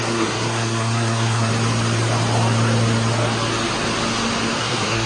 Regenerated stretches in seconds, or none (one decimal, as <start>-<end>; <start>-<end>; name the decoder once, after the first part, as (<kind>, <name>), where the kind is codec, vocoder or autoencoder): 0.0-1.5 (codec, SNAC); 4.6-5.1